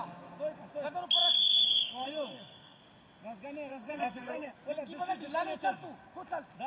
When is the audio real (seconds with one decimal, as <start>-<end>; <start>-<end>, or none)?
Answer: 0.0-1.6; 2.8-3.7; 4.5-6.7

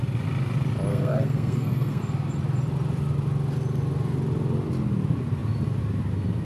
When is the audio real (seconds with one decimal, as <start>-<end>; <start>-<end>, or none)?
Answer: 0.0-0.9; 2.0-6.4

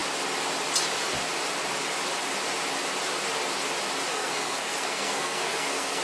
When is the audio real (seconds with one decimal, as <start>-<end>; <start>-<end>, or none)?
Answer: 0.0-4.1

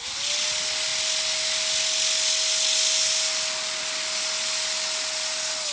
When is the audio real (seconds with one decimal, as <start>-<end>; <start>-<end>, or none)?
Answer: 0.0-5.7

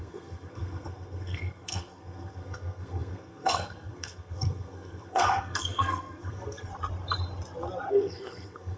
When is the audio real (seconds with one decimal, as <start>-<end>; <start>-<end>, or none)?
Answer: 6.7-7.9